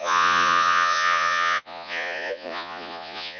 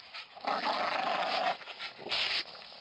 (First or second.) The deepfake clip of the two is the first